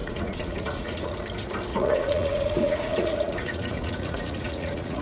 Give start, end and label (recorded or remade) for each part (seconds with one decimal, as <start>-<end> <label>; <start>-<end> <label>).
0.0-1.1 remade; 1.1-1.7 recorded; 1.7-5.0 remade